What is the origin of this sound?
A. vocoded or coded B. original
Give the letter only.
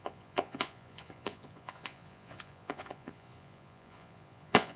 A